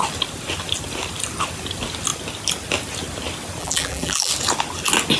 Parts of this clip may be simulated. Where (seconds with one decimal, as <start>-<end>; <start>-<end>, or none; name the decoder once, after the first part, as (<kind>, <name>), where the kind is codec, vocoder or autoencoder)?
3.6-4.3 (vocoder, BigVGAN v2)

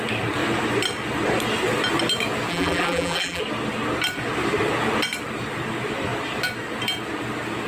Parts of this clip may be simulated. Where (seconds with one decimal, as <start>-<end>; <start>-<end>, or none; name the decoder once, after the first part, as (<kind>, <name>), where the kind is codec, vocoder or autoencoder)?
2.5-3.4 (vocoder, BigVGAN v2)

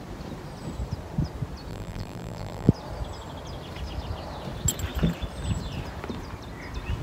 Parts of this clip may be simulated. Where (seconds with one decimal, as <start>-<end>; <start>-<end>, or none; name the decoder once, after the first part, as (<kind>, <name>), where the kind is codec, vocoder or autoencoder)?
1.7-2.7 (vocoder, BigVGAN v2)

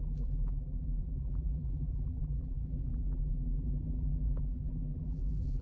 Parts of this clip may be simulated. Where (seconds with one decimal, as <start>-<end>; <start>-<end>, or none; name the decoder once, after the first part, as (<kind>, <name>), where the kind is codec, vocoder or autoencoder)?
0.0-5.6 (vocoder, BigVGAN v2)

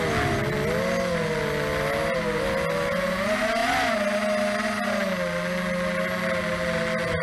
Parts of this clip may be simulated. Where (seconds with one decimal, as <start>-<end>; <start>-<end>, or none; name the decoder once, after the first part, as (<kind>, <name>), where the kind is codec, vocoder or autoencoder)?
none

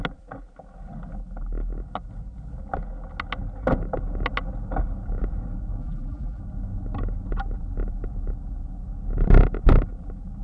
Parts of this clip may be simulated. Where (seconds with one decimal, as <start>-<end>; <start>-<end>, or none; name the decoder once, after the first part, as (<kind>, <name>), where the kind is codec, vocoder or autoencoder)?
5.8-6.4 (vocoder, BigVGAN v2)

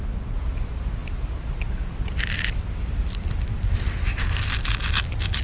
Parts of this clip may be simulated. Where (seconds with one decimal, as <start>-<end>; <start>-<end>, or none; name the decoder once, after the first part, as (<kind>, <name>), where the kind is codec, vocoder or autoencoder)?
1.0-4.0 (vocoder, BigVGAN v2)